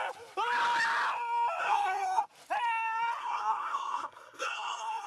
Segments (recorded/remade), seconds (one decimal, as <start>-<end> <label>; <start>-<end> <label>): 0.0-1.6 recorded; 1.6-2.2 remade; 2.2-3.2 recorded; 3.2-5.1 remade